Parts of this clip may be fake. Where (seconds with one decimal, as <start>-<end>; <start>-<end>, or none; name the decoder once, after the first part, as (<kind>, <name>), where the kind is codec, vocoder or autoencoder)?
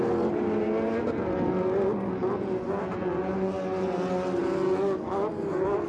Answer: none